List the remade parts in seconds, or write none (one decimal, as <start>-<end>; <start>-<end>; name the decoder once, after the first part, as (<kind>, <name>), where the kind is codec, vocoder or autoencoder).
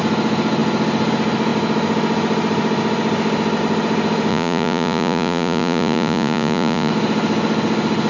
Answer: 4.3-6.9 (vocoder, Vocos)